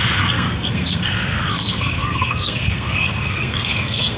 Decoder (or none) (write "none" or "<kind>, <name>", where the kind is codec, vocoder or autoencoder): codec, SNAC